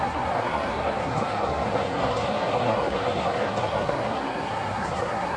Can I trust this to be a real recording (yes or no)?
no